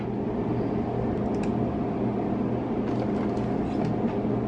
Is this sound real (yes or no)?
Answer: yes